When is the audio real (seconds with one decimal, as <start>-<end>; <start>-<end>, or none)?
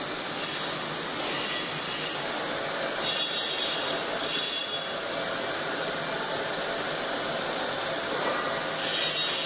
0.0-9.5